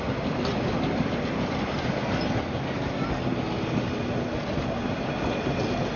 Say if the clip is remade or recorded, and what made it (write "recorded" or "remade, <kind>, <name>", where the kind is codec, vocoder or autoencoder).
recorded